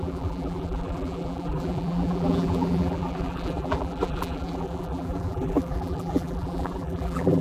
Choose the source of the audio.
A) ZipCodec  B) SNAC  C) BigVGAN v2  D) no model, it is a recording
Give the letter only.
C